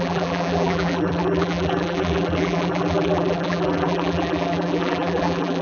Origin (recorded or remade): remade